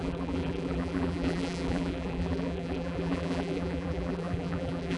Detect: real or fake fake